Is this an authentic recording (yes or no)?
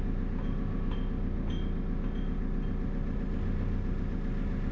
yes